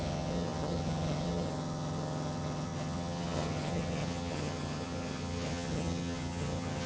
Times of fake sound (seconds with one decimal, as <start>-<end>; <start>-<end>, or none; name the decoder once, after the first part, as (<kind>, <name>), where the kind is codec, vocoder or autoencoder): 0.0-6.9 (vocoder, HiFi-GAN)